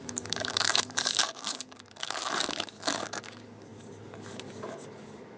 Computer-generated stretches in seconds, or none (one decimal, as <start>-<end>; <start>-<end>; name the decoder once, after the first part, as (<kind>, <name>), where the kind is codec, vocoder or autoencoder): 0.0-5.4 (codec, DAC)